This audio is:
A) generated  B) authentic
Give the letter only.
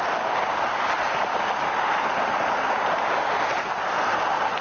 B